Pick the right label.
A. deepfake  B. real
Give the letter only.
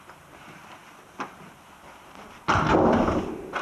B